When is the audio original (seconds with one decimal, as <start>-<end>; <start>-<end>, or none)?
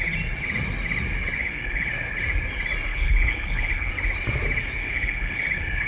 0.0-1.4; 1.9-2.9; 3.9-4.8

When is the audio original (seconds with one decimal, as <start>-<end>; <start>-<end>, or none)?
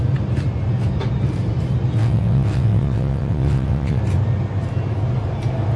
0.0-2.0; 4.0-5.8